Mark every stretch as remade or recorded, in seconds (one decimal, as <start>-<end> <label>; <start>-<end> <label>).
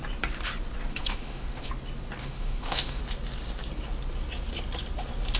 0.0-0.9 recorded; 0.9-1.7 remade; 1.7-2.2 recorded; 2.2-3.0 remade; 3.0-5.4 recorded